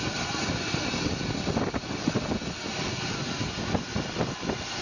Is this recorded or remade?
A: recorded